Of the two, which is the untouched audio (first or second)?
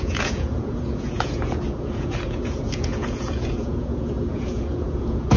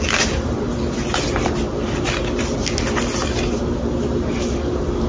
second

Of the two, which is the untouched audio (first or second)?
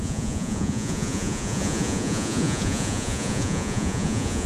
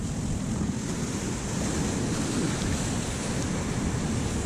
second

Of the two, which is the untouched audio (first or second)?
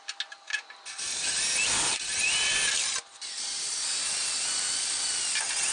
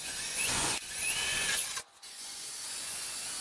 first